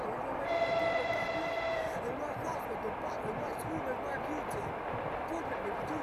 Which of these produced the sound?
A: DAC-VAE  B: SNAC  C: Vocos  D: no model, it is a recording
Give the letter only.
D